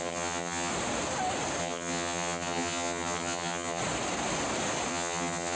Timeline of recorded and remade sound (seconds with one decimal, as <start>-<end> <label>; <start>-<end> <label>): 0.0-0.7 remade; 0.7-1.6 recorded; 1.6-3.8 remade; 3.8-4.9 recorded; 4.9-5.6 remade